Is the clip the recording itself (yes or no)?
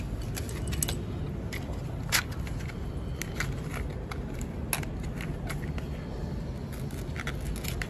yes